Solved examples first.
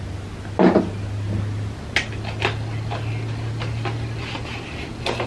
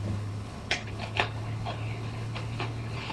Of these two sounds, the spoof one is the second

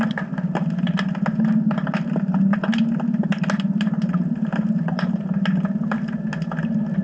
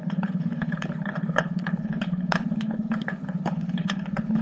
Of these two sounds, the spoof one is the second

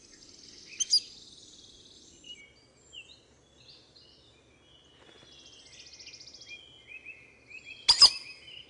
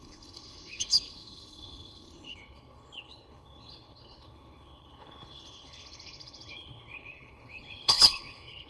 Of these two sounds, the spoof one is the second